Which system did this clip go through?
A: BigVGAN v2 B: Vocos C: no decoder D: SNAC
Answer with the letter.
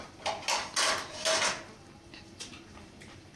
C